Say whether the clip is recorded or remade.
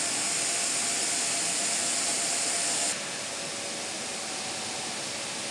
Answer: recorded